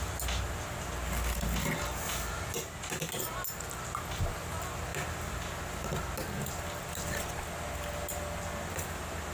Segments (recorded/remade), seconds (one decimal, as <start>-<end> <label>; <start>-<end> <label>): 0.0-9.3 recorded